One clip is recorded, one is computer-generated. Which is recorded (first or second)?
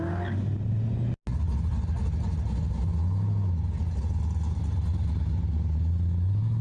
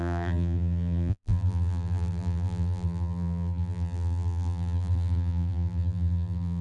first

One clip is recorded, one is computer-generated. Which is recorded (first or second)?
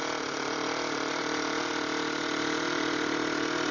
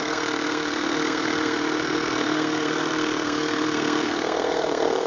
first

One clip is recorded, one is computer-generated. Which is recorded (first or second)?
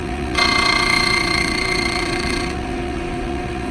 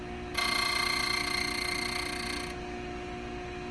second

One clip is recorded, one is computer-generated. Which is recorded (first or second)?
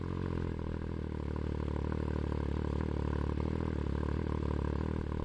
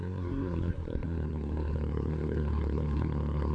first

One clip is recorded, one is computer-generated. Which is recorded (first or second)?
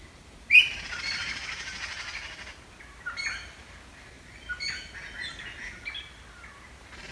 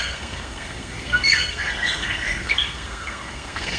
first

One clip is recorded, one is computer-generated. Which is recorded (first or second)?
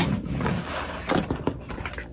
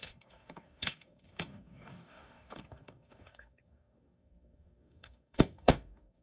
first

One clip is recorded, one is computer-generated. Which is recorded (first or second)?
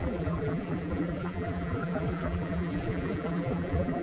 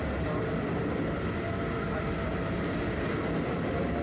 second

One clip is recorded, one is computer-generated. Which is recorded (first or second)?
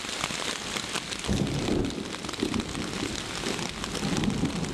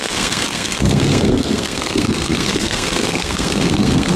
first